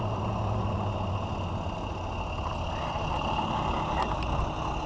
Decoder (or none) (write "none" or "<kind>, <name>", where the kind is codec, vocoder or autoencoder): none